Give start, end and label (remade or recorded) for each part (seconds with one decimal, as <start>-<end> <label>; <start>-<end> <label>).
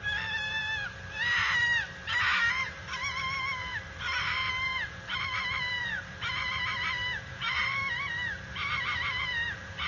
0.0-0.6 remade; 0.6-2.6 recorded; 2.6-9.9 remade